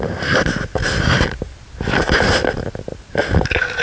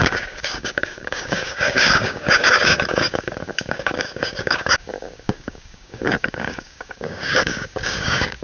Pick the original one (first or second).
first